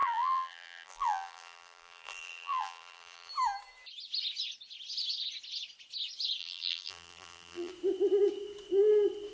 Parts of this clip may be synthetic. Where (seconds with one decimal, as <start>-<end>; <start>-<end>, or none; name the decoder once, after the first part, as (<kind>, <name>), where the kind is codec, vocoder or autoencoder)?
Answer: 0.0-3.3 (vocoder, BigVGAN v2); 6.4-7.7